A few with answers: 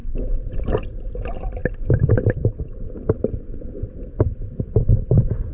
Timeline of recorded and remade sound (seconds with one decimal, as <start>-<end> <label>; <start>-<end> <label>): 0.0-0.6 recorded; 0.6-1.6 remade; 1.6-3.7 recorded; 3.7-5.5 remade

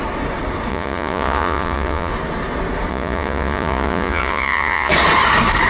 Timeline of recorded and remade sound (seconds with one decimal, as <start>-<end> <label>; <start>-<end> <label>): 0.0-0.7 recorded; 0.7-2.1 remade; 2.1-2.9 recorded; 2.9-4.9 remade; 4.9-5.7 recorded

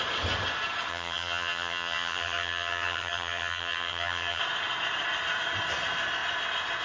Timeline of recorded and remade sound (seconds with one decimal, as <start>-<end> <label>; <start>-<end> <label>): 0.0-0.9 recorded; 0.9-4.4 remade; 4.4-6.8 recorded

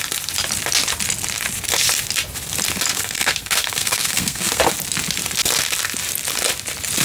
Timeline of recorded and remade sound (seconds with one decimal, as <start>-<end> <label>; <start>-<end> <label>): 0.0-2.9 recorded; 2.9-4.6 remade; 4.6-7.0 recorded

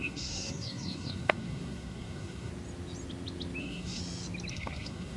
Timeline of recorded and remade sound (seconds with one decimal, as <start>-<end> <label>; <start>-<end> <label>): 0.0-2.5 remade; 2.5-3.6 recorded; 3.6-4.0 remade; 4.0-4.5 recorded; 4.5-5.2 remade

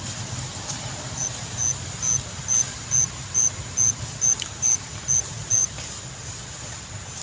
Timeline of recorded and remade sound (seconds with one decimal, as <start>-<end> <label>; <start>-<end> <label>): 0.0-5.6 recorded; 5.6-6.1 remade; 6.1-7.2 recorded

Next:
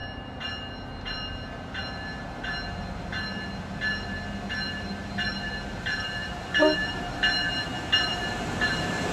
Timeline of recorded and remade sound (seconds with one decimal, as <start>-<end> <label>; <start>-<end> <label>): 0.0-1.8 remade; 1.8-5.3 recorded; 5.3-9.1 remade

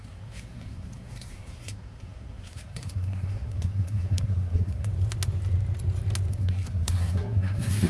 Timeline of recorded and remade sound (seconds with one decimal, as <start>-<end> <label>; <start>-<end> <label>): 0.0-4.9 remade; 4.9-6.3 recorded; 6.3-7.9 remade